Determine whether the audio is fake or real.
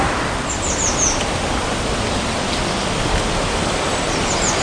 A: real